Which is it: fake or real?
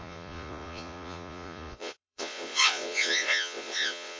fake